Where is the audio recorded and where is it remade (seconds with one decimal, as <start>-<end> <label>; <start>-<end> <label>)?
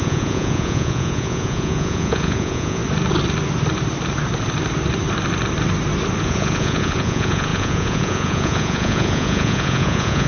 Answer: 0.0-2.8 remade; 2.8-6.2 recorded; 6.2-10.3 remade